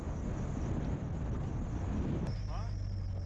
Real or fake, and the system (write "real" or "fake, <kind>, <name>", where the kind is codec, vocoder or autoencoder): real